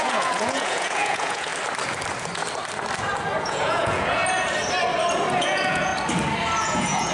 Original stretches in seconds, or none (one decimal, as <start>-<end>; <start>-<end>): 1.5-3.4; 4.2-5.4; 5.9-6.6